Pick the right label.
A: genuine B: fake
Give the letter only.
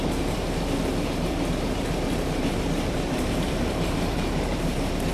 B